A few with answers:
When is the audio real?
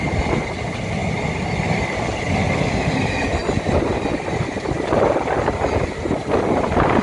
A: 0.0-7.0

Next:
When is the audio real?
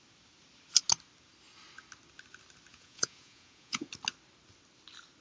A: 0.0-2.7; 3.9-5.2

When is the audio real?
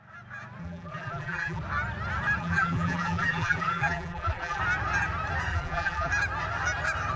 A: 0.0-0.6; 1.6-2.4; 4.6-5.5; 6.1-7.2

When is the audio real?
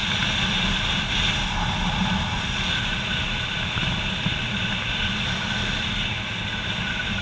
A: 0.0-7.2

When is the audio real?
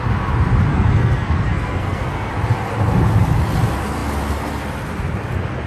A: 0.0-0.7; 2.3-5.7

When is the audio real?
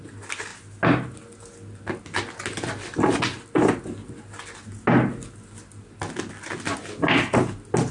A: 0.0-7.9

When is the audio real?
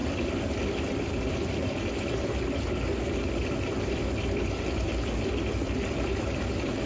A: 0.0-0.9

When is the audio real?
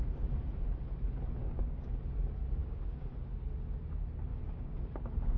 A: 0.0-1.4; 2.0-2.6; 3.5-4.3